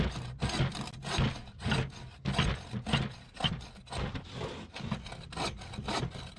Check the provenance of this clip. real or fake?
real